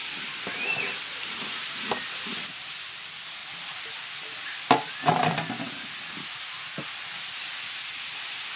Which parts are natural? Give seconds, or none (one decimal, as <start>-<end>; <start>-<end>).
2.5-3.4; 4.9-8.6